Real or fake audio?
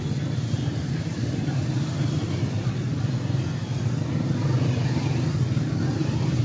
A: real